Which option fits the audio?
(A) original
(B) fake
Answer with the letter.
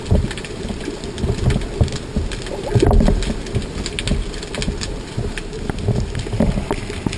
A